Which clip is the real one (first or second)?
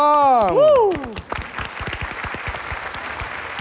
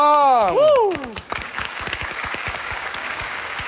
first